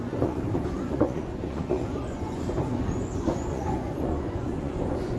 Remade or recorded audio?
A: remade